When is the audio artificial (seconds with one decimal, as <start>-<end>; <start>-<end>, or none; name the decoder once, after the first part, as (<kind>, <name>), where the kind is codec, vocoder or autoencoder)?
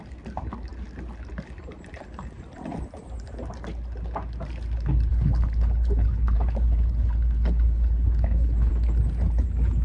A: 5.1-8.7 (codec, HILCodec)